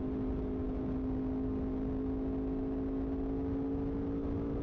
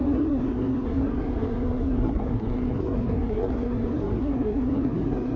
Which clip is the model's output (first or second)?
second